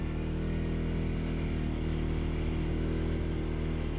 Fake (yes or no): no